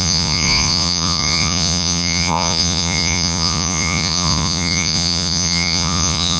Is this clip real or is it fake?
fake